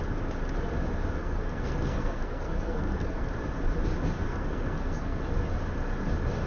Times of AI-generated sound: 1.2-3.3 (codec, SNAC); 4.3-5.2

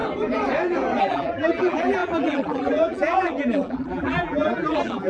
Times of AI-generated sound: 1.0-5.1 (vocoder, BigVGAN v2)

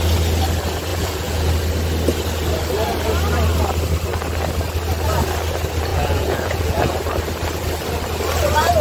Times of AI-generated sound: 0.9-1.5 (vocoder, Vocos); 5.9-7.0

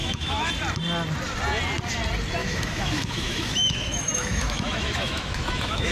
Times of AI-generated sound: 0.0-0.5 (autoencoder, DAC-VAE); 2.4-5.9

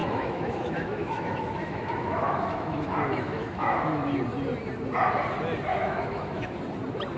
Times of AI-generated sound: 0.0-4.2 (autoencoder, DAC-VAE); 5.7-6.5

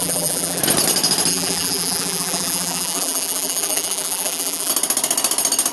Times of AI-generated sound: 0.0-0.6 (vocoder, BigVGAN v2); 1.3-4.7

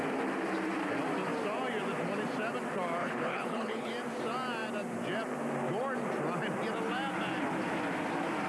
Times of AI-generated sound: 3.0-3.9 (codec, HILCodec)

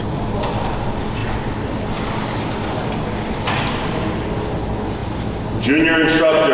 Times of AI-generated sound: none